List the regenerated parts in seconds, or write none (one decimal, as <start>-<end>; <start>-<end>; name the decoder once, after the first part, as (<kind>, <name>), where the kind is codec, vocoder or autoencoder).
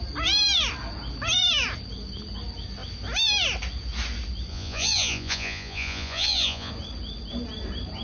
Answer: 4.5-6.7 (vocoder, Vocos)